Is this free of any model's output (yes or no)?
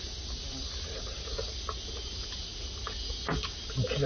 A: yes